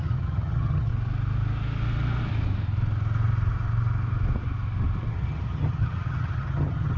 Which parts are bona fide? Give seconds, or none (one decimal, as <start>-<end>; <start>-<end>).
0.9-5.1